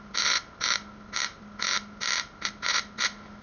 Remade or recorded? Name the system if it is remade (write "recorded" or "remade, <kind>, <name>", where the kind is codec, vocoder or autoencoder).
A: recorded